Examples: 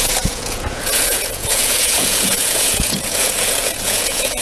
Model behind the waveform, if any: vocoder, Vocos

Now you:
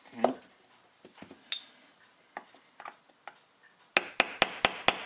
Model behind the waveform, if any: none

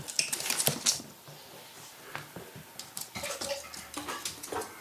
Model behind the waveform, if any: none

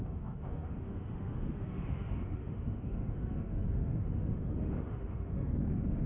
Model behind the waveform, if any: autoencoder, DAC-VAE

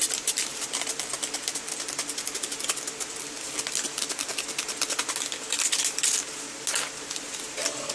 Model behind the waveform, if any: none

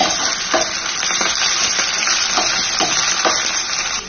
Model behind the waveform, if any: none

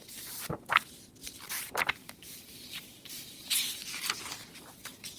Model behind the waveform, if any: vocoder, BigVGAN v2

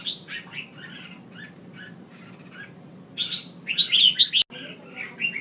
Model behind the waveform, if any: none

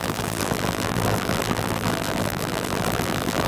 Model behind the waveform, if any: vocoder, BigVGAN v2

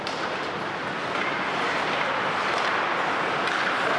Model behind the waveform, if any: none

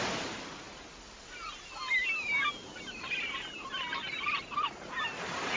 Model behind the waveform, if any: none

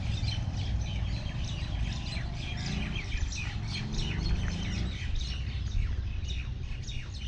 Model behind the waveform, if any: none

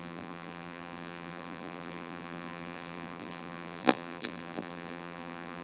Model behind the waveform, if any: vocoder, BigVGAN v2